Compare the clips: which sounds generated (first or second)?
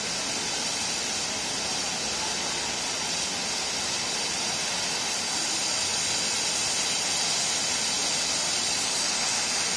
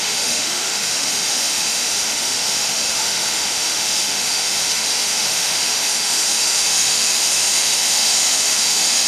second